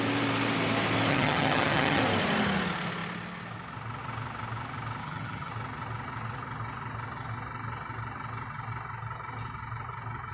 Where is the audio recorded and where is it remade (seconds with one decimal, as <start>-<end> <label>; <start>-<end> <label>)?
0.0-1.1 recorded; 1.1-2.0 remade; 2.0-5.0 recorded; 5.0-5.5 remade; 5.5-10.3 recorded